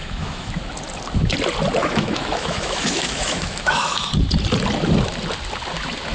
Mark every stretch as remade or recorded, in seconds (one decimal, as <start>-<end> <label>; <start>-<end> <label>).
0.0-0.5 remade; 0.5-1.8 recorded; 1.8-4.1 remade; 4.1-6.1 recorded